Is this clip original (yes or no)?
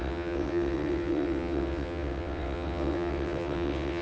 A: no